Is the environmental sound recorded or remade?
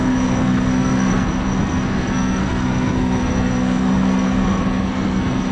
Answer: remade